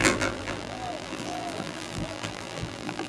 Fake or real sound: fake